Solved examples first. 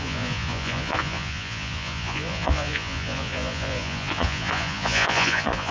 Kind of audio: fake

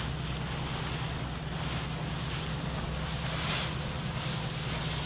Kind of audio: real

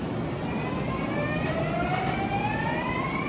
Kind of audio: real